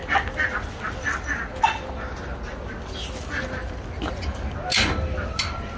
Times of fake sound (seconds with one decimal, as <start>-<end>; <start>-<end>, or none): none